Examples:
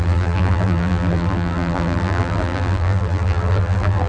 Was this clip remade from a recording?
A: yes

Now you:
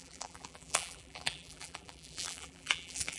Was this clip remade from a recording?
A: yes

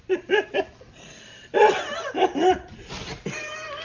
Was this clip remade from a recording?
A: yes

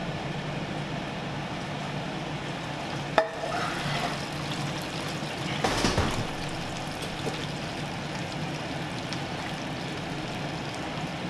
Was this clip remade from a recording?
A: no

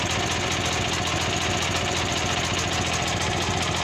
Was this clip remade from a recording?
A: no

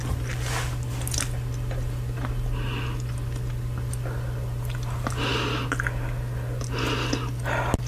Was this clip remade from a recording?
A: no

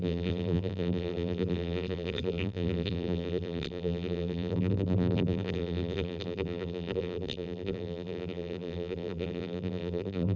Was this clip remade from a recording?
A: yes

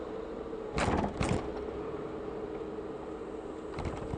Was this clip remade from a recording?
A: no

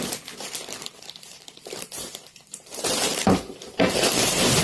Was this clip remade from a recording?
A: yes